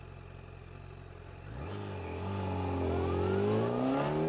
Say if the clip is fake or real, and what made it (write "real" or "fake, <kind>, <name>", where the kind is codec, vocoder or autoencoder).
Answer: real